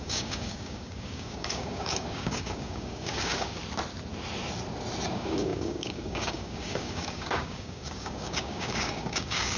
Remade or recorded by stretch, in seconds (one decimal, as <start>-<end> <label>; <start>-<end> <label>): 0.0-3.6 remade; 3.6-5.1 recorded; 5.1-9.6 remade